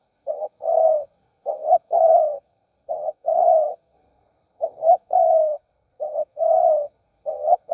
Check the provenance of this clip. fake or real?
fake